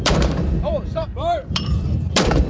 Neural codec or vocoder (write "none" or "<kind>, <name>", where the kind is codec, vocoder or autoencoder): vocoder, BigVGAN v2